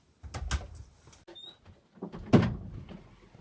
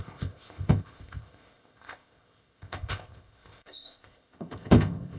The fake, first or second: second